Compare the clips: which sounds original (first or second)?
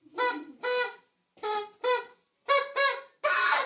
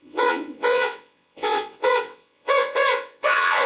first